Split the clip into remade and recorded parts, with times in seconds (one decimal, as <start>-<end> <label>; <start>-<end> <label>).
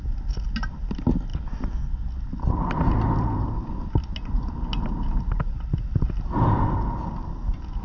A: 0.0-7.8 recorded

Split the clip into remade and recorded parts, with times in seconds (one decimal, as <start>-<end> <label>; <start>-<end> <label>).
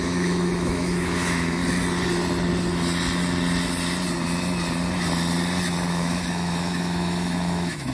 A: 0.0-1.6 remade; 1.6-5.9 recorded; 5.9-7.9 remade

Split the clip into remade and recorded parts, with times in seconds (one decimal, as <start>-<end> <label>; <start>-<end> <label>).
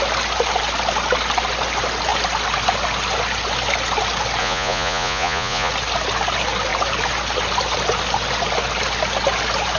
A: 0.0-4.4 recorded; 4.4-5.7 remade; 5.7-9.8 recorded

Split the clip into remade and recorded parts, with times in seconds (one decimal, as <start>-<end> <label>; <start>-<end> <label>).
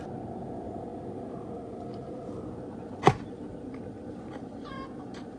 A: 0.0-5.4 recorded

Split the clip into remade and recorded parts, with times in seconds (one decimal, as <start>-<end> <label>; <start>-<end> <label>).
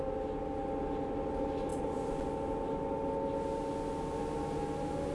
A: 0.0-5.1 recorded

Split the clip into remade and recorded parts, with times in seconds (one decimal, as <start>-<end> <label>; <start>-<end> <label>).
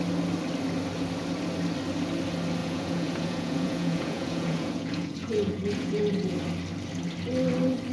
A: 0.0-2.6 recorded; 2.6-6.4 remade; 6.4-7.9 recorded